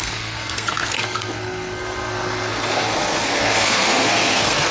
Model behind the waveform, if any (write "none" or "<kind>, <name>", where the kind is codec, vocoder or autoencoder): codec, SNAC